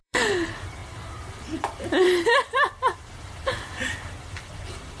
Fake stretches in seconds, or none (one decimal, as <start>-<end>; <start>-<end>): 0.0-5.0